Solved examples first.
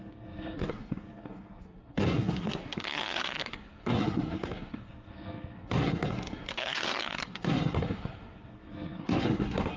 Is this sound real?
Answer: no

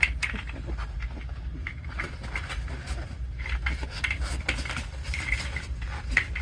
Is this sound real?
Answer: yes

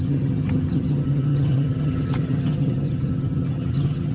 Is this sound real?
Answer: no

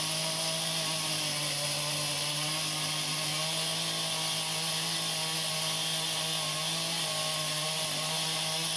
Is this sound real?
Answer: yes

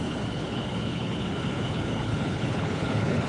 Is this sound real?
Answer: no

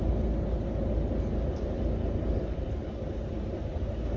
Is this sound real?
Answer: yes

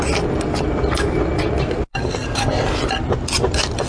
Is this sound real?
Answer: yes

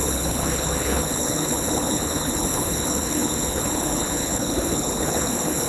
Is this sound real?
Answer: no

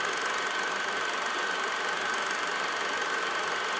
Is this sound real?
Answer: yes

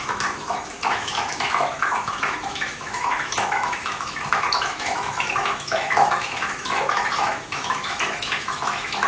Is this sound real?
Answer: no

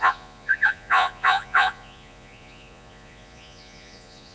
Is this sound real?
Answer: no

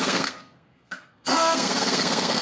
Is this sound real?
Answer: no